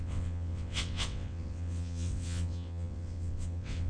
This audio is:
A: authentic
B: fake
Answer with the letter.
B